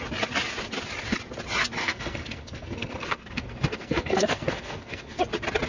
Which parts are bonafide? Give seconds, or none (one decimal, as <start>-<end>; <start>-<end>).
0.0-1.8; 5.2-5.7

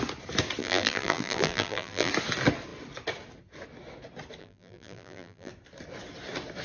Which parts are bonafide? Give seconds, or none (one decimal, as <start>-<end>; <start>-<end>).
0.0-0.6; 2.1-4.4; 5.5-6.6

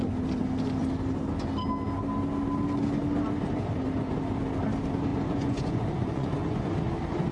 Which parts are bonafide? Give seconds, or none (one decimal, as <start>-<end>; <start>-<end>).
0.0-5.1; 6.7-7.3

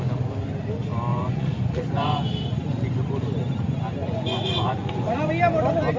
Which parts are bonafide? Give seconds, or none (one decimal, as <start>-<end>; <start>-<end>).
0.0-1.1; 2.3-4.0; 5.3-6.0

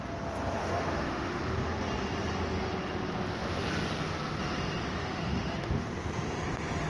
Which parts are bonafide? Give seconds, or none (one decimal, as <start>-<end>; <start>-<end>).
0.0-0.6; 1.4-4.9; 5.9-6.9

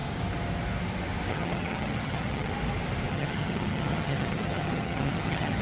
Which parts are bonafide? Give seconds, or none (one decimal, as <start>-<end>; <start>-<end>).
0.0-1.3; 2.5-3.1